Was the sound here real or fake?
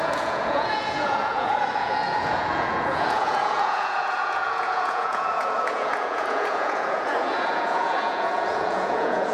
fake